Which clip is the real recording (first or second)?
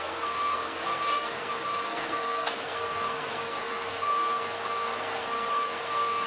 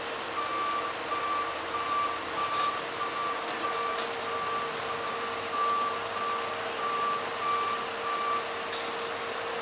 second